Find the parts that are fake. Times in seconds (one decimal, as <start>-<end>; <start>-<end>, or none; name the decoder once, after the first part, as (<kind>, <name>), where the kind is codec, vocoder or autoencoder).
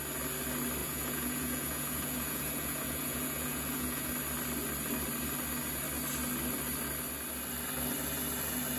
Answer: 0.8-4.1 (vocoder, Vocos)